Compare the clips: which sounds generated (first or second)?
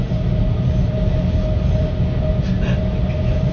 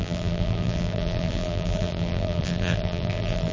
second